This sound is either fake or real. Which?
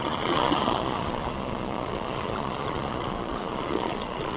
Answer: fake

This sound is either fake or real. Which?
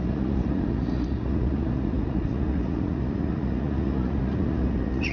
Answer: fake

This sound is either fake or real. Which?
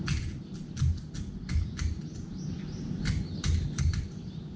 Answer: real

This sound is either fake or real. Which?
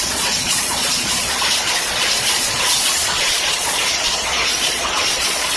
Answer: fake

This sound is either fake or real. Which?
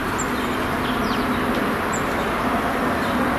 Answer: real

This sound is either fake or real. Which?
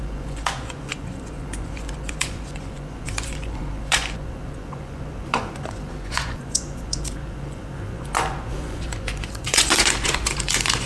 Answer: fake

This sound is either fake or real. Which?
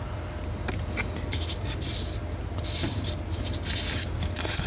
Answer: real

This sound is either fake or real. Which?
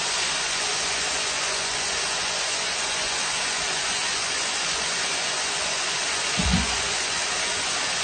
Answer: fake